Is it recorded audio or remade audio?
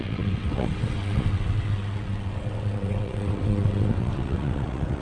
remade